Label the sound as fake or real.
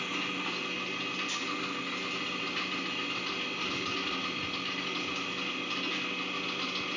real